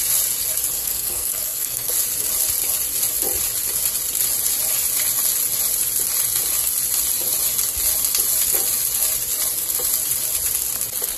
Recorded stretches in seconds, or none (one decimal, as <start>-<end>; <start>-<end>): 0.0-0.8; 1.9-11.2